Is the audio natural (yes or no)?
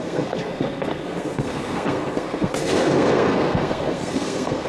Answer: no